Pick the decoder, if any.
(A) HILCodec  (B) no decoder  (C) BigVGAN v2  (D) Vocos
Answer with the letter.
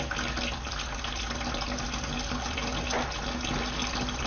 B